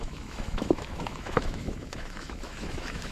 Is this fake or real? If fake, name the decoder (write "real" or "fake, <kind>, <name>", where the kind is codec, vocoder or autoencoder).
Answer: fake, autoencoder, DAC-VAE